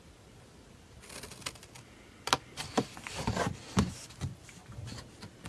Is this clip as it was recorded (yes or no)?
yes